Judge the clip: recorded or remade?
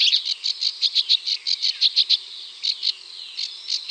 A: recorded